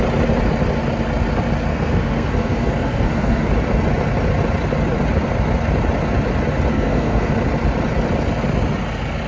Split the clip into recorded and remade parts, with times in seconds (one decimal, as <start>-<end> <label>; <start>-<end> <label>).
0.0-1.7 recorded; 1.7-3.5 remade; 3.5-6.7 recorded; 6.7-7.3 remade; 7.3-9.3 recorded

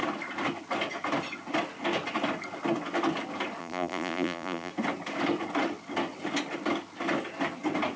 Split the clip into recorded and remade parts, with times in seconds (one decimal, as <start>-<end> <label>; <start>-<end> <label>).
0.0-3.6 recorded; 3.6-4.7 remade; 4.7-8.0 recorded